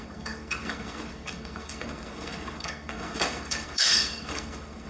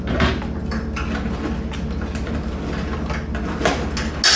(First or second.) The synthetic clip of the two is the first